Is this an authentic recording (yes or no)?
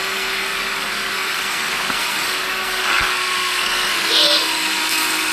no